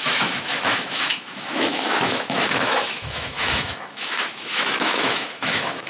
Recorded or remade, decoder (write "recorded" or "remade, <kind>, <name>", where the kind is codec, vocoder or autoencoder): remade, autoencoder, DAC-VAE